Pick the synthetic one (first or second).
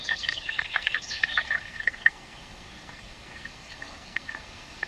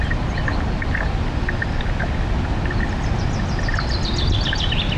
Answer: first